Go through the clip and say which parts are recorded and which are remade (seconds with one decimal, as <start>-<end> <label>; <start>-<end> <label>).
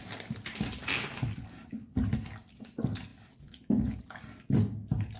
0.0-5.2 recorded